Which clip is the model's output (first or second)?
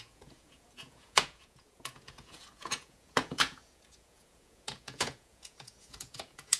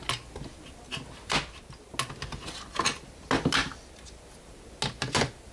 first